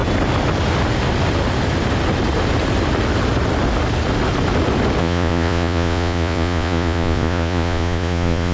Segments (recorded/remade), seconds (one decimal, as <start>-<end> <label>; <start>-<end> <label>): 0.0-5.0 recorded; 5.0-8.5 remade